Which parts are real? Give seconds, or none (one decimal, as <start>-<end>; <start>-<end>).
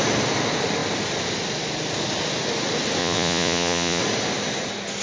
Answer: 0.0-3.0; 4.0-5.0